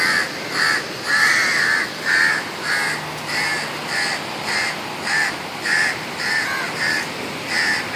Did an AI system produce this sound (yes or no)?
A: no